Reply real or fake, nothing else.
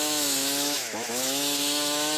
fake